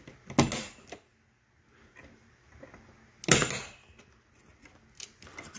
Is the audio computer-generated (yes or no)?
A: no